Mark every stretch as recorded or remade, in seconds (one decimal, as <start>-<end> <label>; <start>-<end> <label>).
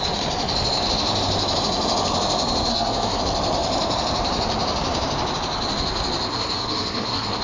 0.0-2.7 recorded; 2.7-3.2 remade; 3.2-6.3 recorded; 6.3-7.4 remade